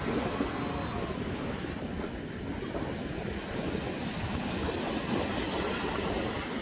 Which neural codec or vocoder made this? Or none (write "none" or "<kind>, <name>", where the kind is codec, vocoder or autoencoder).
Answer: none